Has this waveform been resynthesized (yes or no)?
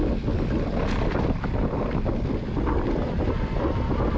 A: no